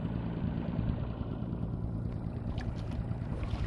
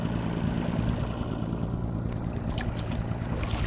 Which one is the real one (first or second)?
second